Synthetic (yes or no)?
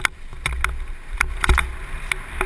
no